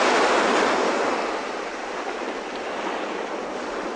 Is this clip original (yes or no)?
yes